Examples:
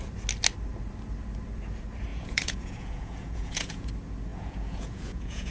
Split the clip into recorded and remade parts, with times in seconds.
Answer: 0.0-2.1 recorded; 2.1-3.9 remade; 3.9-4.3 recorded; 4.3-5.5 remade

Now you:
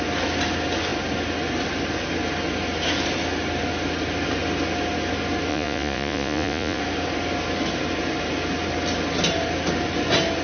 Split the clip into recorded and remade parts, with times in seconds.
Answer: 0.0-5.5 recorded; 5.5-6.8 remade; 6.8-10.4 recorded

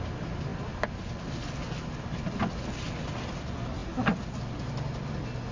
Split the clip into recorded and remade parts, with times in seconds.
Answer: 0.0-5.5 recorded

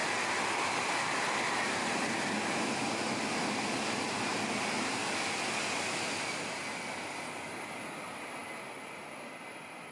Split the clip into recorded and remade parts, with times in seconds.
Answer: 0.0-9.9 recorded

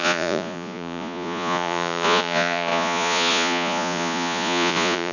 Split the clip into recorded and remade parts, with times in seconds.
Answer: 0.0-5.1 remade

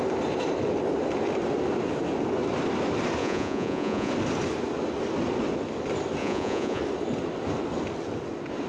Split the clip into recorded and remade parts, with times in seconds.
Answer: 0.0-3.2 recorded; 3.2-4.1 remade; 4.1-6.2 recorded; 6.2-6.8 remade; 6.8-8.7 recorded

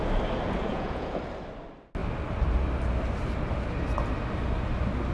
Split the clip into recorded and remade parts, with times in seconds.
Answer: 0.0-0.7 recorded; 0.7-1.2 remade; 1.2-5.1 recorded